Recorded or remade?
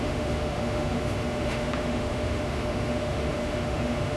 remade